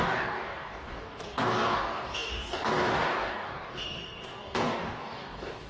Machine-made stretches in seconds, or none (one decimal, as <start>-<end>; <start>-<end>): 0.0-5.7